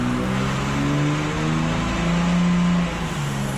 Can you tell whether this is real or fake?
real